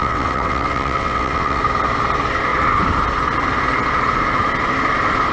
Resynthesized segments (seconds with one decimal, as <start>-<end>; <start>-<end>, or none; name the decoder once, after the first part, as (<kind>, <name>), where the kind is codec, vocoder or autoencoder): 0.0-1.6 (vocoder, WaveNeXt)